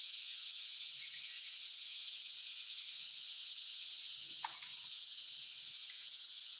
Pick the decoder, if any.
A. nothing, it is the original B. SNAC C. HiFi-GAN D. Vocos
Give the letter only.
D